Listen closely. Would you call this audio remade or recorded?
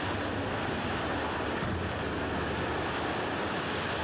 recorded